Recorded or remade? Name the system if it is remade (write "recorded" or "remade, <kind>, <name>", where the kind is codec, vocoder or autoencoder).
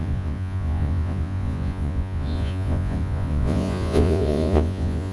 remade, vocoder, Vocos